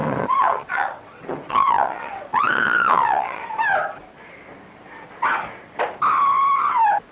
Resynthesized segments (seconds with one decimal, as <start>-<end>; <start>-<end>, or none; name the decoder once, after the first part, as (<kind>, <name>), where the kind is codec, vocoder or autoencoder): 0.0-3.4 (vocoder, WaveNeXt)

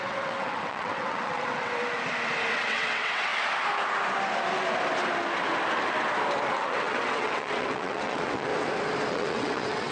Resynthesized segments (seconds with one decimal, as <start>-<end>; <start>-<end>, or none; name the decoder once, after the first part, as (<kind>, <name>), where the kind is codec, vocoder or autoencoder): 0.0-1.8 (vocoder, WaveNeXt); 2.5-3.3; 6.6-8.5; 9.1-9.9

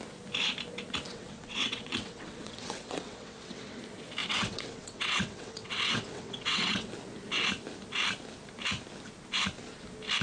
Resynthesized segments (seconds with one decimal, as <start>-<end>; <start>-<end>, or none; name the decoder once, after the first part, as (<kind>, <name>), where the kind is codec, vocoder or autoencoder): 1.1-3.8 (vocoder, WaveNeXt); 4.2-6.9